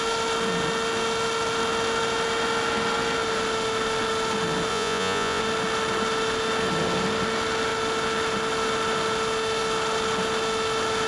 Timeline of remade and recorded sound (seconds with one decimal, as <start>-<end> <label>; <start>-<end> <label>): 0.0-4.7 recorded; 4.7-5.4 remade; 5.4-11.1 recorded